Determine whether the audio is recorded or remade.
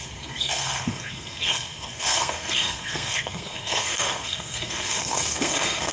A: remade